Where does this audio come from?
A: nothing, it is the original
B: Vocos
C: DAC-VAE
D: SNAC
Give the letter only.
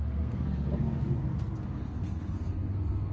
D